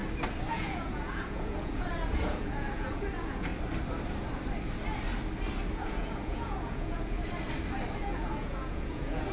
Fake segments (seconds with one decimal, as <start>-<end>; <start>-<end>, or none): 0.5-3.5; 5.7-7.2; 8.0-9.3